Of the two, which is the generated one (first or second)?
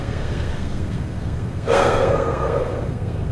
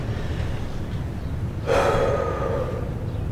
first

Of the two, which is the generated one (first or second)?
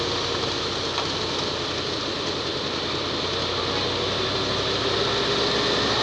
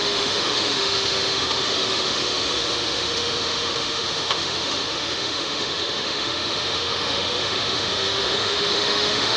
second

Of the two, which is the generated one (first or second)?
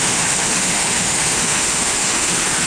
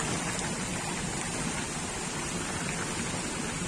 first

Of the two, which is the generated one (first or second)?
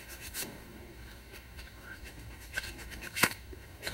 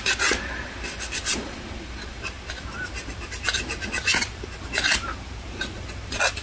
first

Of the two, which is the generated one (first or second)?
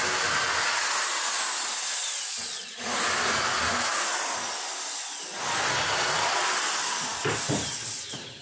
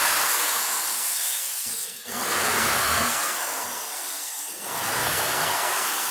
second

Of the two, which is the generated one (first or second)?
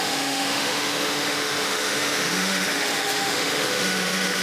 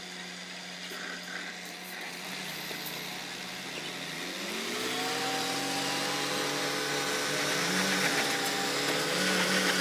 first